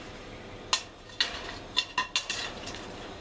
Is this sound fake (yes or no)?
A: no